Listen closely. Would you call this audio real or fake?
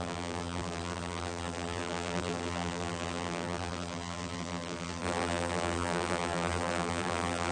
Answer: fake